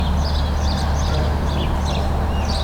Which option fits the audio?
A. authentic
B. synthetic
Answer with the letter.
A